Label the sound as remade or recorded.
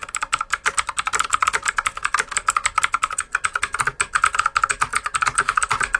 recorded